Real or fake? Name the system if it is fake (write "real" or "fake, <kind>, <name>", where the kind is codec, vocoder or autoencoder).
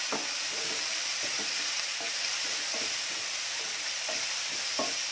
real